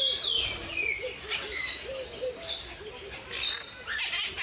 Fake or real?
real